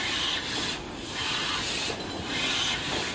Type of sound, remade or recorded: recorded